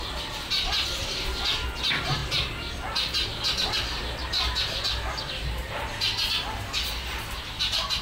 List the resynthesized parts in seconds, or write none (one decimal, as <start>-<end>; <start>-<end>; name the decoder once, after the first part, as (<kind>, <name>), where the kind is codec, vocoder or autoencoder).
none

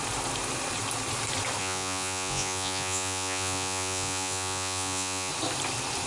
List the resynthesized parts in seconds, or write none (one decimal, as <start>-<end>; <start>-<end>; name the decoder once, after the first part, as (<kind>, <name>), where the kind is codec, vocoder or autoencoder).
1.6-5.3 (vocoder, Vocos)

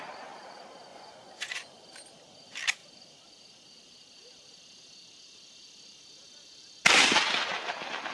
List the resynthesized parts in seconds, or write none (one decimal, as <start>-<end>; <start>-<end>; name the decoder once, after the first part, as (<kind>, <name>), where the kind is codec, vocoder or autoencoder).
0.9-1.9 (vocoder, Vocos)